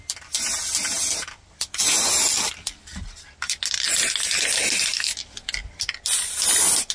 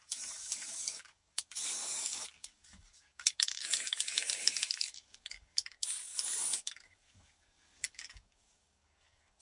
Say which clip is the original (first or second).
first